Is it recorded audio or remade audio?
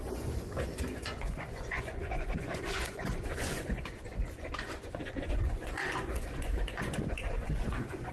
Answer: remade